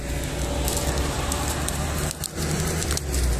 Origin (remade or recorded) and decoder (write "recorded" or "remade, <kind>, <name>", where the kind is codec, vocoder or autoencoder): recorded